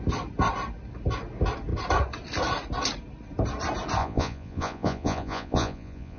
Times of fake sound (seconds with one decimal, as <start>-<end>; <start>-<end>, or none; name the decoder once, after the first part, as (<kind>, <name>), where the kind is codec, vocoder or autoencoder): 4.0-6.2 (vocoder, Vocos)